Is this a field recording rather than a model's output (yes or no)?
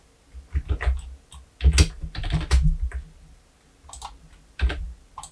yes